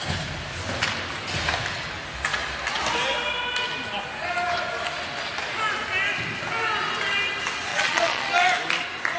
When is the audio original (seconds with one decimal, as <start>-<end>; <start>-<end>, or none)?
0.0-7.7; 8.3-9.2